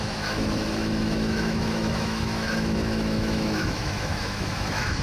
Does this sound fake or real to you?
fake